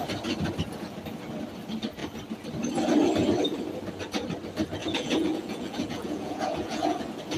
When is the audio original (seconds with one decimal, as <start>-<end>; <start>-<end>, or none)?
0.0-4.8; 7.0-7.4